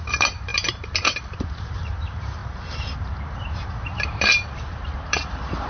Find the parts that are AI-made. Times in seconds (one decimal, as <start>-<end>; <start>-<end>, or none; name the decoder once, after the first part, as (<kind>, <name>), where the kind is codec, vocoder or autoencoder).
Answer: 0.0-2.4 (vocoder, BigVGAN v2); 3.6-5.7

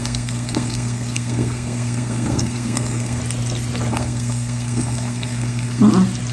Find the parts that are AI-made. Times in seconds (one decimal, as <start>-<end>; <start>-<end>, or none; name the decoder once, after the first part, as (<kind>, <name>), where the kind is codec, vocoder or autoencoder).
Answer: 0.0-3.2 (codec, SNAC); 3.9-5.8